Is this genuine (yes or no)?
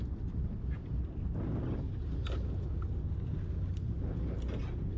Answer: yes